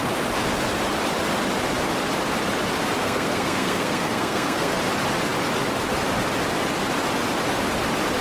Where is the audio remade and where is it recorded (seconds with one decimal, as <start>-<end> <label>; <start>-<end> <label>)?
0.0-3.0 recorded; 3.0-4.8 remade; 4.8-8.2 recorded